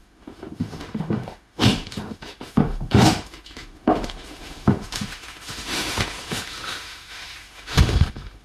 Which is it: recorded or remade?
remade